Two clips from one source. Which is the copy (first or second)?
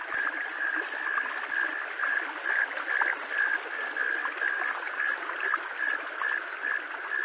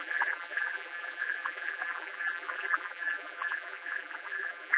second